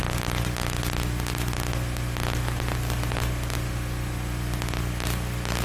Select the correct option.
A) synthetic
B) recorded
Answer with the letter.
B